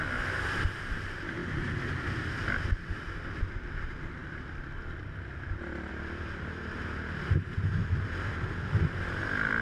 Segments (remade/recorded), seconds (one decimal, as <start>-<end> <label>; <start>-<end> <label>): 0.0-9.6 recorded